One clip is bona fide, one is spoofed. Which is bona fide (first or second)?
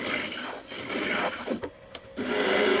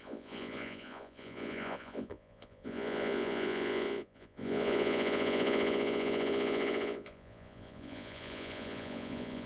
first